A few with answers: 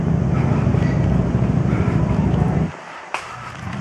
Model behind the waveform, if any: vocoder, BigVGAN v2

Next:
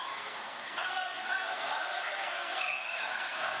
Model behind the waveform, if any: codec, SNAC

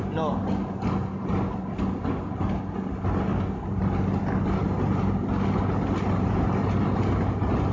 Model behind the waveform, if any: none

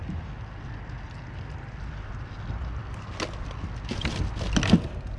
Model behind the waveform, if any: none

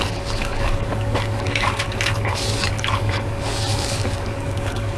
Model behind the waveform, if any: codec, DAC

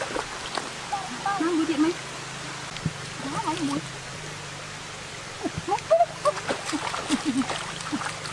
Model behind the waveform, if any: none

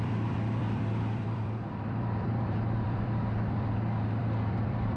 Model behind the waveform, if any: vocoder, BigVGAN v2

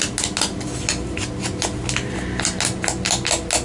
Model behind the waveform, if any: none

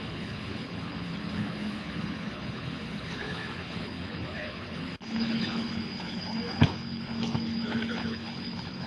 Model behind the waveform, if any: codec, HILCodec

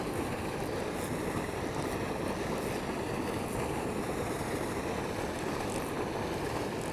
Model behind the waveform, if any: none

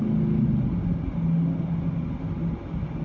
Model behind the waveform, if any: none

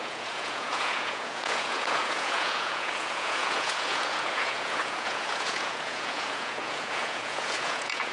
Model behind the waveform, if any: vocoder, Vocos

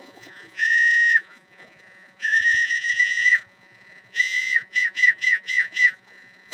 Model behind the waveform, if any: vocoder, Vocos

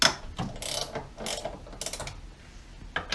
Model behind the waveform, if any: none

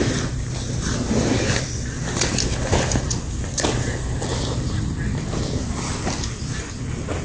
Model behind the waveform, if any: none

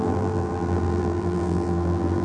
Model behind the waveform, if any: vocoder, BigVGAN v2